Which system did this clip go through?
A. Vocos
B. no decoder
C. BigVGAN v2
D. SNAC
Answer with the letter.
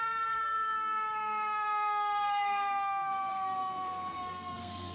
D